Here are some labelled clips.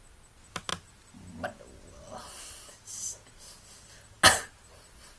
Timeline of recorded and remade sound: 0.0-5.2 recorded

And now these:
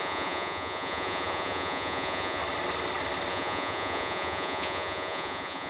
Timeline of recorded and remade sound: 0.0-2.4 remade; 2.4-3.3 recorded; 3.3-5.7 remade

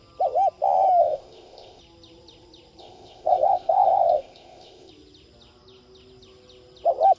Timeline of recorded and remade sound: 0.0-1.0 recorded; 1.0-1.8 remade; 1.8-2.8 recorded; 2.8-4.9 remade; 4.9-7.2 recorded

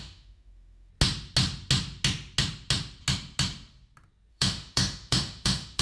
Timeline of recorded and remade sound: 0.0-0.9 remade; 0.9-4.3 recorded; 4.3-5.8 remade

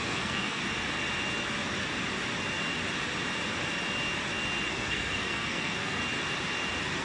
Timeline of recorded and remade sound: 0.0-0.6 remade; 0.6-4.7 recorded; 4.7-6.0 remade; 6.0-7.0 recorded